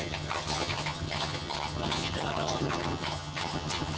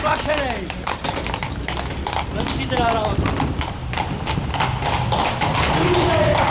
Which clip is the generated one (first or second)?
first